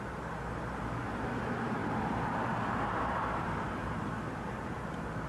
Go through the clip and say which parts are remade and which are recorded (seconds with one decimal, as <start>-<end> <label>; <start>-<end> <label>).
0.0-1.8 recorded; 1.8-5.3 remade